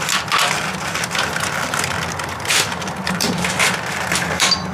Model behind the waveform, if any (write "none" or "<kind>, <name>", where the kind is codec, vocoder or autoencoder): vocoder, BigVGAN v2